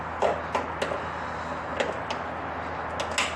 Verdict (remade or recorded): recorded